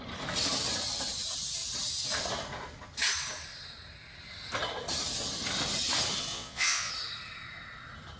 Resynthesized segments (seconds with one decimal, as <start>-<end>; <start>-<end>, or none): 6.3-6.9